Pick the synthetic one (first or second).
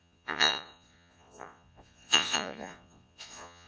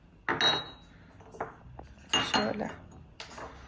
first